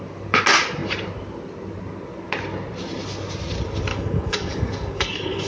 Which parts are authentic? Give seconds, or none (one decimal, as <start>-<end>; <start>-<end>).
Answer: 0.0-3.9